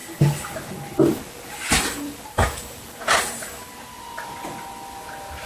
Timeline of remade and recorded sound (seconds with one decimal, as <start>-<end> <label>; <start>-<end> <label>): 0.0-5.5 recorded